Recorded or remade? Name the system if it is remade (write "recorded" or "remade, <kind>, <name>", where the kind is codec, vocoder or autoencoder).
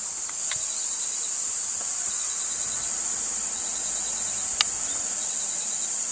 recorded